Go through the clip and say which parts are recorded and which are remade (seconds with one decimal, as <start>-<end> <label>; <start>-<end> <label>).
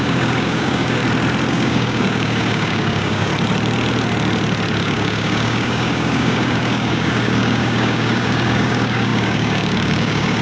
0.0-1.0 remade; 1.0-1.5 recorded; 1.5-3.3 remade; 3.3-4.8 recorded; 4.8-10.4 remade